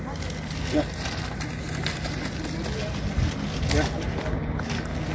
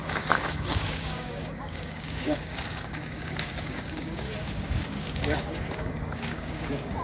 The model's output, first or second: second